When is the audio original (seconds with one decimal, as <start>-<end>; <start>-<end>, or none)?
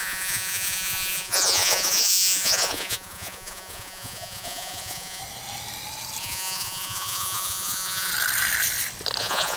5.2-6.2; 8.1-9.2